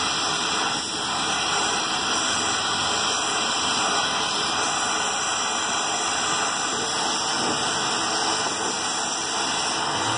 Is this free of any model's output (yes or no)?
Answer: yes